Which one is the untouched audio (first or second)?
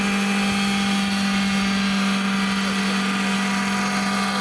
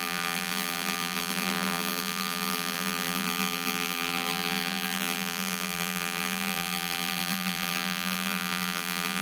first